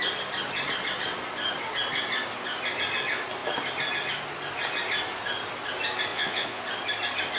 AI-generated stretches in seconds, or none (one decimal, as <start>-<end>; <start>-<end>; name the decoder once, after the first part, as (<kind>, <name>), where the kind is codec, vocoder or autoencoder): 6.1-6.6 (vocoder, Vocos)